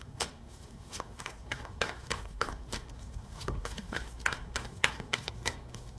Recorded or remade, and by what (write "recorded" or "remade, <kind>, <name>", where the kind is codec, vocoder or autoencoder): remade, codec, SNAC